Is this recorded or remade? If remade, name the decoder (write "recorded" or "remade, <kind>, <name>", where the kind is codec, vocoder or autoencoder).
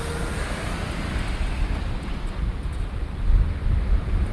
recorded